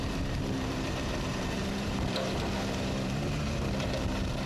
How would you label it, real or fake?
fake